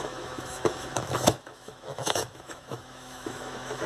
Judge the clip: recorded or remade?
remade